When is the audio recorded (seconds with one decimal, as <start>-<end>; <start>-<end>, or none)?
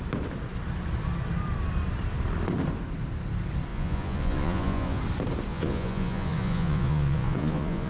0.0-3.7; 5.0-5.5